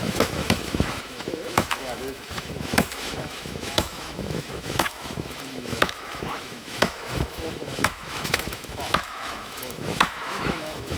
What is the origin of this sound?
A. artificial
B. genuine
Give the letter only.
A